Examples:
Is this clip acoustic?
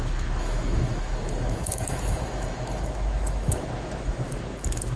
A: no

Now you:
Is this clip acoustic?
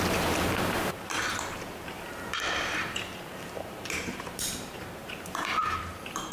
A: no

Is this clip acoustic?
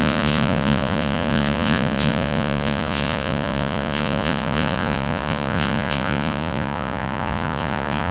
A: no